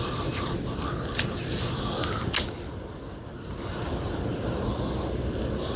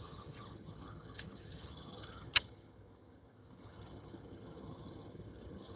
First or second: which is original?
first